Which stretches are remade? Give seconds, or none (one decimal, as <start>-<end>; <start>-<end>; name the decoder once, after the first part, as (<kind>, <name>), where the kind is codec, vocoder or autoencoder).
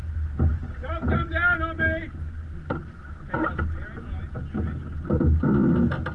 none